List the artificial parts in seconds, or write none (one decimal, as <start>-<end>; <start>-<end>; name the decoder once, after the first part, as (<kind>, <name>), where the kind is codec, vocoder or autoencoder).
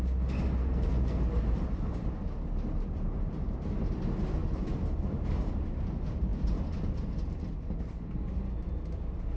0.6-1.2 (codec, SNAC)